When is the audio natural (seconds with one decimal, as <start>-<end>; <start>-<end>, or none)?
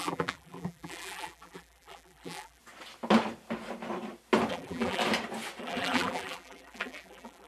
2.6-4.5; 5.0-5.6